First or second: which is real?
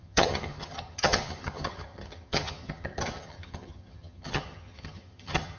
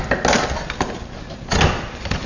second